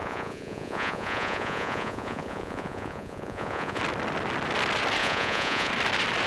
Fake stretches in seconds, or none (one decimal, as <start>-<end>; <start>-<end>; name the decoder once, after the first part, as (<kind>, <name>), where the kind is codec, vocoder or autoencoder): 0.0-3.8 (vocoder, Vocos); 5.0-5.7